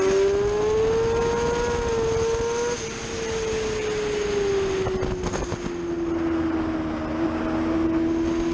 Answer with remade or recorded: recorded